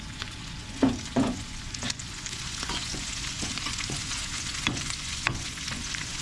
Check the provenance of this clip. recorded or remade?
remade